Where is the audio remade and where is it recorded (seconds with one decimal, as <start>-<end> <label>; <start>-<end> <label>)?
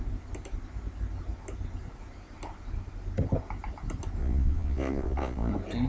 0.0-4.2 recorded; 4.2-5.5 remade; 5.5-5.9 recorded